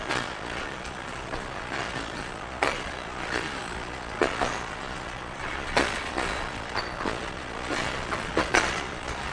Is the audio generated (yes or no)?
yes